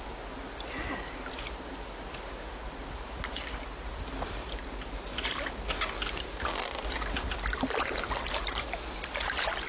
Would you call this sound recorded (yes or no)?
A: yes